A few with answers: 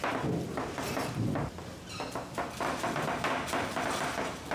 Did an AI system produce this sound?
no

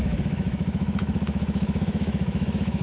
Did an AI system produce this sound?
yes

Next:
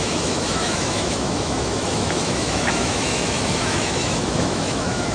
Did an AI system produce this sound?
yes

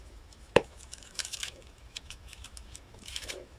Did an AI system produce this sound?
yes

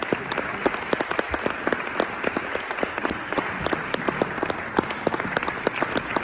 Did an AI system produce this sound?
no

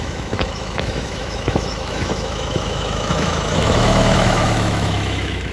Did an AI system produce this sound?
yes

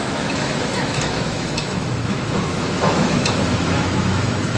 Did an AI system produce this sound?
yes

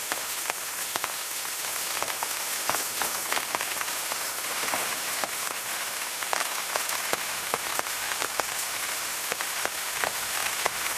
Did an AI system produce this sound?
yes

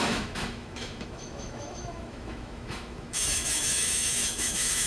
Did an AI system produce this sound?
yes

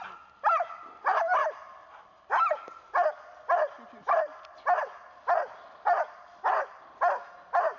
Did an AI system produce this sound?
no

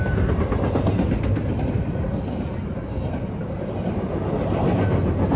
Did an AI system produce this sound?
no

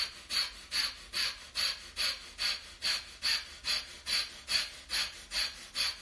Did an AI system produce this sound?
no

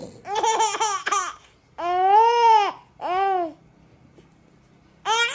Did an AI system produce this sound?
no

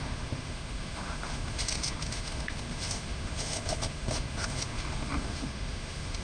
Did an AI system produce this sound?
yes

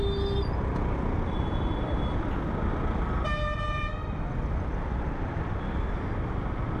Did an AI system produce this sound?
no